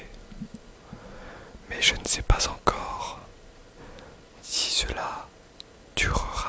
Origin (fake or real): real